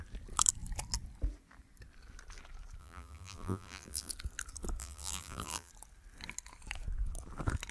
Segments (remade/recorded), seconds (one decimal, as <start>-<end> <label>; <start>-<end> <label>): 0.0-2.8 recorded; 2.8-4.1 remade; 4.1-4.8 recorded; 4.8-5.7 remade; 5.7-7.7 recorded